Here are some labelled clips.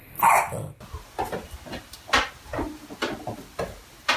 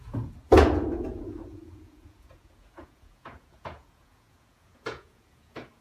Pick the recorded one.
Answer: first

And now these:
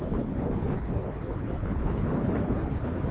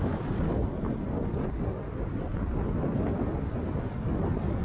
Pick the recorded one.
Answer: second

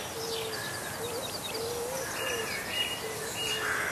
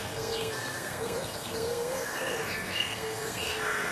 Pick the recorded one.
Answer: first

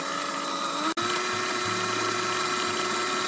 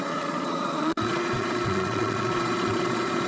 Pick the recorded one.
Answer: first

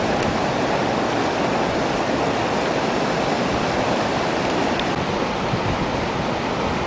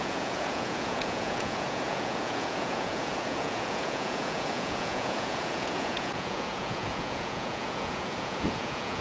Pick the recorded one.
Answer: first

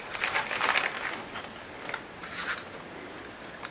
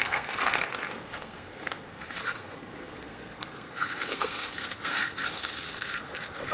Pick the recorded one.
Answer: first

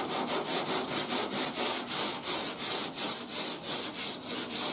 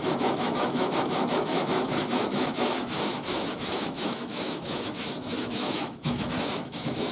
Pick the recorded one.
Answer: first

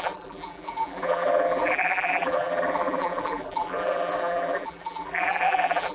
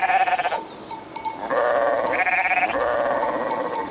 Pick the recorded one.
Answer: second